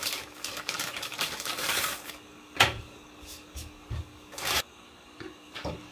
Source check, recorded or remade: remade